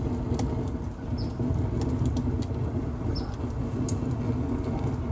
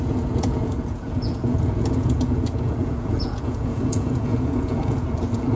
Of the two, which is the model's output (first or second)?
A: second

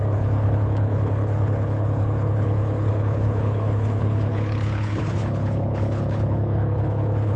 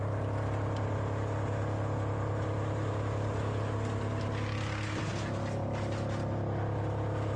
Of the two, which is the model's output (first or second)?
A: first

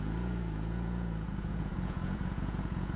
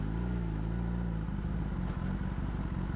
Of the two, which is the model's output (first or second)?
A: first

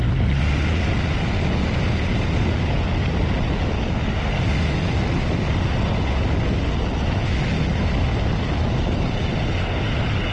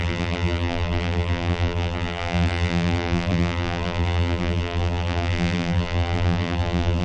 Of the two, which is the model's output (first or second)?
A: second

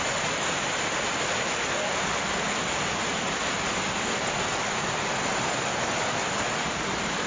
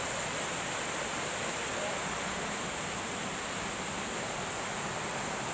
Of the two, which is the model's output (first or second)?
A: first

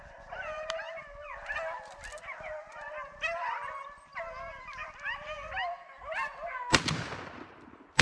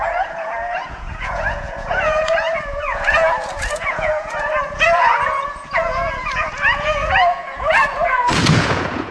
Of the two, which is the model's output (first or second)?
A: second